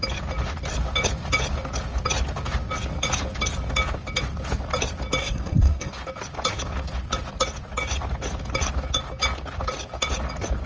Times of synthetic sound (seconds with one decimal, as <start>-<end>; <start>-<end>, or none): 5.2-5.9